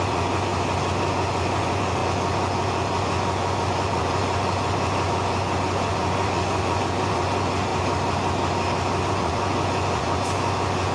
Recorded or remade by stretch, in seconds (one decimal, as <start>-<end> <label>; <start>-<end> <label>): 0.0-0.5 remade; 0.5-1.1 recorded; 1.1-7.7 remade; 7.7-9.1 recorded; 9.1-10.9 remade